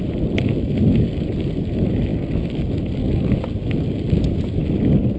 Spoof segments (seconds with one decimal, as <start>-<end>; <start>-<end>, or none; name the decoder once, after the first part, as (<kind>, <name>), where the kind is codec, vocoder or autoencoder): none